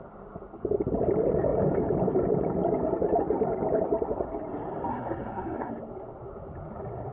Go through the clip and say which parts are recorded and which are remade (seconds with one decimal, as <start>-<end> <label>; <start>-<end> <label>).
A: 0.0-4.9 recorded; 4.9-5.7 remade; 5.7-7.1 recorded

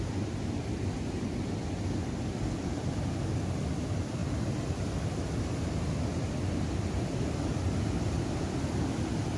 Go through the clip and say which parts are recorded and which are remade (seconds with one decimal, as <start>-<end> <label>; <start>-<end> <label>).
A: 0.0-9.4 recorded

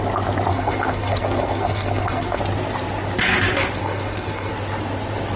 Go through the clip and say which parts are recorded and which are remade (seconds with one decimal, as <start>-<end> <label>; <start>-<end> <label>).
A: 0.0-0.5 recorded; 0.5-2.4 remade; 2.4-3.8 recorded; 3.8-4.5 remade; 4.5-5.4 recorded

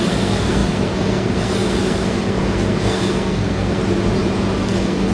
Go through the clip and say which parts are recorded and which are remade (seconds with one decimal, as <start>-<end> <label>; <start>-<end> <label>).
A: 0.0-3.8 remade; 3.8-4.6 recorded; 4.6-5.1 remade

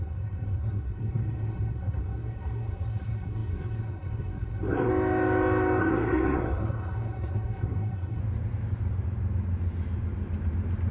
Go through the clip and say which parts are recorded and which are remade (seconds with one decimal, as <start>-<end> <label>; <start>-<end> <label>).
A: 0.0-4.9 remade; 4.9-5.8 recorded; 5.8-8.2 remade; 8.2-10.9 recorded

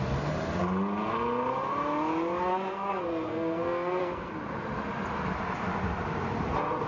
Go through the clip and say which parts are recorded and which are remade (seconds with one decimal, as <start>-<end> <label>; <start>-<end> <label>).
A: 0.0-2.5 recorded; 2.5-4.3 remade; 4.3-6.9 recorded

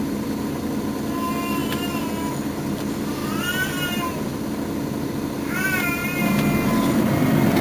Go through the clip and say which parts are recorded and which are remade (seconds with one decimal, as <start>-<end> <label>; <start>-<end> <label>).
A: 0.0-7.6 recorded